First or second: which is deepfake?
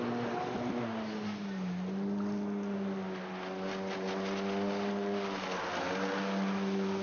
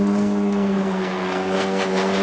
second